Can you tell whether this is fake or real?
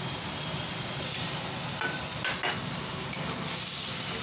real